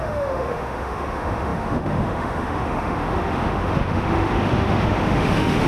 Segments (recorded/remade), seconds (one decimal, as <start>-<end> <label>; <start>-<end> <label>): 0.0-5.7 remade